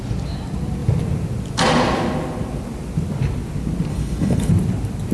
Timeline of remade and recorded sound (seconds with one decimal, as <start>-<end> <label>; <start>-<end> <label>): 0.0-3.9 recorded; 3.9-4.5 remade; 4.5-5.1 recorded